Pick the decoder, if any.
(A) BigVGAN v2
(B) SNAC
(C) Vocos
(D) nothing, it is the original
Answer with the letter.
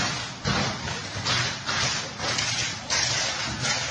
D